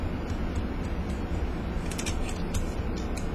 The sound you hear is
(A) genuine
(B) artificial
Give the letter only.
A